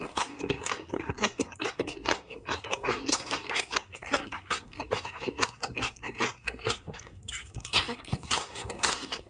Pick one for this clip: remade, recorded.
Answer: remade